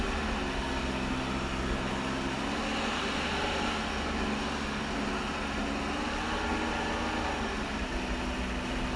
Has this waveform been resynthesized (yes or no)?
no